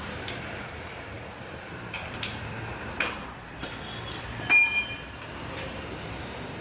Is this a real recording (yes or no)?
no